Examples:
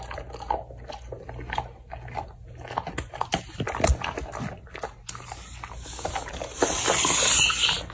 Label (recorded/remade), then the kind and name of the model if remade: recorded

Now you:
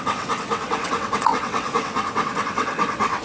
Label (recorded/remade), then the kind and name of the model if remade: remade, vocoder, WaveNeXt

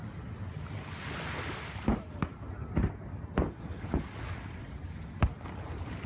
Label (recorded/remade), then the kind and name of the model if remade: recorded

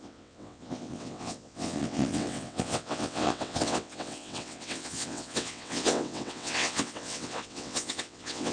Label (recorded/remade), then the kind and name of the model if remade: remade, vocoder, WaveNeXt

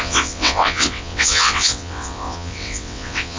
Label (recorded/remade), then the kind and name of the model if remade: remade, vocoder, WaveNeXt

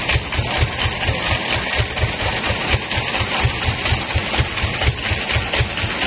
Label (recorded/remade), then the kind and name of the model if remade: recorded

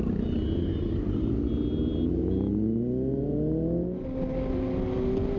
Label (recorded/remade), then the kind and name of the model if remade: recorded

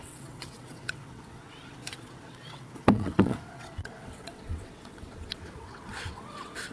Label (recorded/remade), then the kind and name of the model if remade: remade, vocoder, WaveNeXt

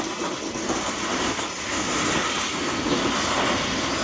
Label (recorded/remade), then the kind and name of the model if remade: recorded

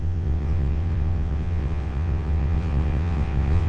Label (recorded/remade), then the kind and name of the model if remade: remade, vocoder, WaveNeXt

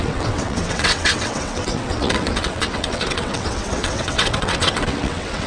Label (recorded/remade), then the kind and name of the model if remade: remade, vocoder, WaveNeXt